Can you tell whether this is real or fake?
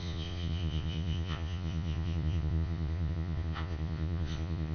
fake